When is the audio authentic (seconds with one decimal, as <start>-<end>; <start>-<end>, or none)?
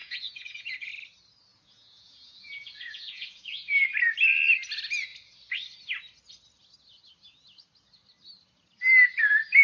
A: 0.9-1.5; 3.7-9.6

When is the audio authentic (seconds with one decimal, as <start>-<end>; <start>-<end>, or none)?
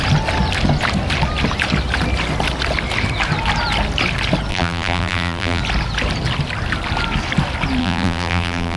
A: 0.0-4.5; 5.6-7.8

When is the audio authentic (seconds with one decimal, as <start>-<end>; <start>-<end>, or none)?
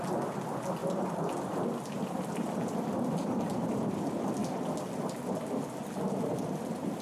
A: 0.0-0.8; 3.9-7.0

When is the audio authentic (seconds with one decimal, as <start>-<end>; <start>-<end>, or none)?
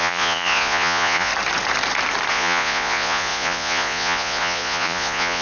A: 1.3-2.3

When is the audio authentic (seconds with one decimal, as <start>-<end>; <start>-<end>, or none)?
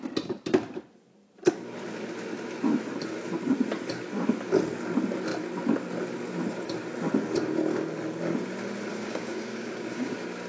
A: 0.0-8.9; 10.1-10.5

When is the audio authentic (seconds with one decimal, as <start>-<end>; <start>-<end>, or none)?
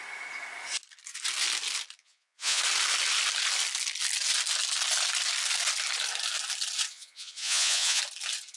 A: 0.0-2.0; 2.6-6.9; 8.0-8.6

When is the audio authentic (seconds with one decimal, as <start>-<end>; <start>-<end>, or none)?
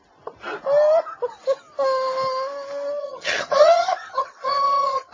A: 0.0-3.0